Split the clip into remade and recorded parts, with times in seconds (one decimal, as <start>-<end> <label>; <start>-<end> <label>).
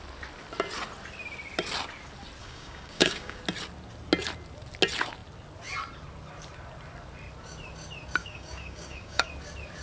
0.0-2.4 recorded; 2.4-3.4 remade; 3.4-8.2 recorded; 8.2-9.3 remade; 9.3-9.8 recorded